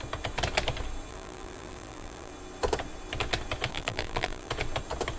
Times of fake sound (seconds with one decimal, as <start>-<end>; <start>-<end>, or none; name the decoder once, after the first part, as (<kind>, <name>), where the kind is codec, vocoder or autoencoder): 1.1-2.3 (vocoder, BigVGAN v2); 3.7-4.5